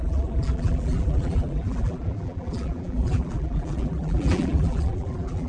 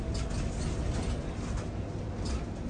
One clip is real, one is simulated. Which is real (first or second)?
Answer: second